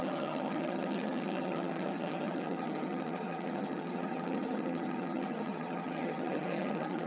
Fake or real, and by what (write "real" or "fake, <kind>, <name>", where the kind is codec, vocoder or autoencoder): fake, vocoder, HiFi-GAN